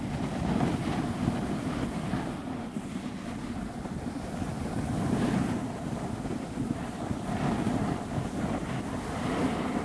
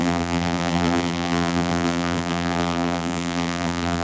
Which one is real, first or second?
first